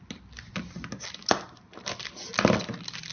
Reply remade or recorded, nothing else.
recorded